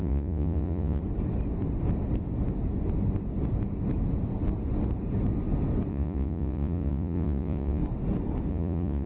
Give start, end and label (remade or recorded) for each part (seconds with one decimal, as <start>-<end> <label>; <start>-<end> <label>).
0.0-1.0 remade; 1.0-5.9 recorded; 5.9-7.8 remade; 7.8-8.5 recorded; 8.5-9.1 remade